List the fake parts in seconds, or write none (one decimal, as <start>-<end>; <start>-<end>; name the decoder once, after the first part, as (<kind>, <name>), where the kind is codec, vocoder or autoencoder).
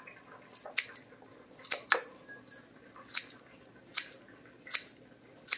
none